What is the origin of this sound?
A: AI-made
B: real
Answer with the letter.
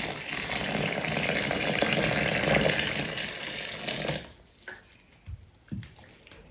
B